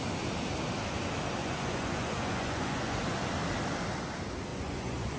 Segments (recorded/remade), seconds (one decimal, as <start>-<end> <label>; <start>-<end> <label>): 0.0-1.4 recorded; 1.4-3.0 remade; 3.0-4.5 recorded; 4.5-5.2 remade